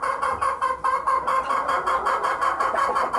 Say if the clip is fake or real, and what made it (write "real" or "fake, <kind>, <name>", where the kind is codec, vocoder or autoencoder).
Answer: real